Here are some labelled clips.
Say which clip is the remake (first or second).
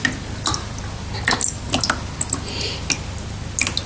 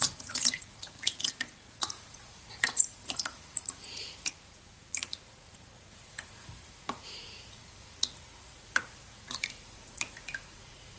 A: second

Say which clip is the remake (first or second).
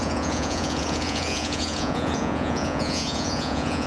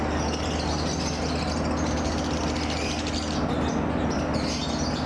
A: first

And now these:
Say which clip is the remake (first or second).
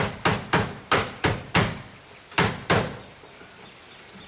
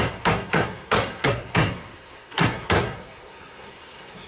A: second